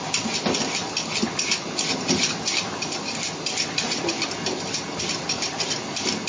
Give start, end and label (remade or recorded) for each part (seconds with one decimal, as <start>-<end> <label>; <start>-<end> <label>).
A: 0.0-6.3 recorded